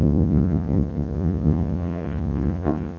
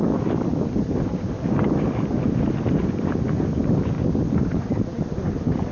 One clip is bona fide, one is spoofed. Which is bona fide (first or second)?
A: second